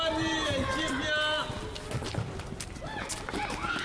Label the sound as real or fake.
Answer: real